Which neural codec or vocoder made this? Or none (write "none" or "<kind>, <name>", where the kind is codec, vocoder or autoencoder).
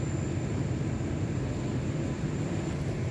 none